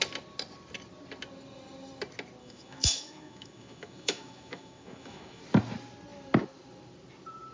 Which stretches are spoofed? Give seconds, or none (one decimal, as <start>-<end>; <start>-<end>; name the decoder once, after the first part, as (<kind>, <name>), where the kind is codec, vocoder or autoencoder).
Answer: 2.4-5.4 (autoencoder, DAC-VAE)

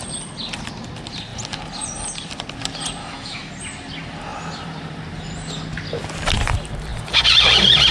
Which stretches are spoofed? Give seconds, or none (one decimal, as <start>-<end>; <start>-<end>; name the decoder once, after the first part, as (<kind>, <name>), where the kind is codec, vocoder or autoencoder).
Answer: 3.0-3.5 (autoencoder, DAC-VAE)

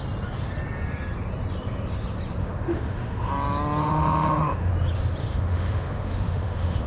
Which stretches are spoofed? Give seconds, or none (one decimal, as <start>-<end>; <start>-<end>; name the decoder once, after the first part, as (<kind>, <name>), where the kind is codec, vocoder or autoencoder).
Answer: 2.4-3.3 (autoencoder, DAC-VAE); 3.8-4.7; 5.2-6.9